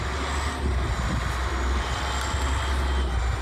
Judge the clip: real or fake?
real